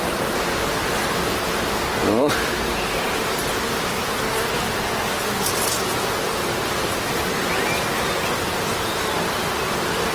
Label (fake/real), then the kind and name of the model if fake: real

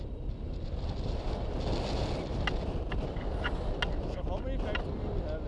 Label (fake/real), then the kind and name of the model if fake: real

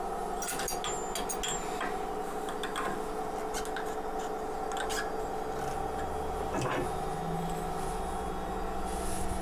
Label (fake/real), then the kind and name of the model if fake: real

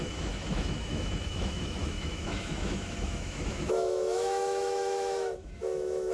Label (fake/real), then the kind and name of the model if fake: fake, autoencoder, DAC-VAE